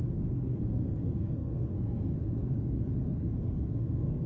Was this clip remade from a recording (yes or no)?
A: yes